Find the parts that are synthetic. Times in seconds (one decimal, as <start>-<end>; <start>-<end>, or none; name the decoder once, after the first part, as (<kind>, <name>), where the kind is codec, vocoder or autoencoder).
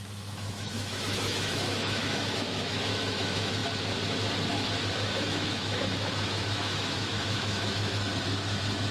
0.0-3.6 (autoencoder, DAC-VAE); 4.9-8.1